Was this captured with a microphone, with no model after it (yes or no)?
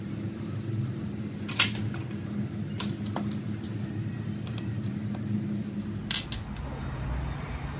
yes